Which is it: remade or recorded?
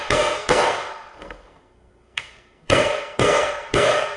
remade